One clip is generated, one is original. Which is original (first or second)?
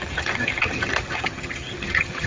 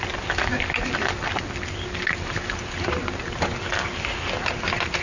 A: second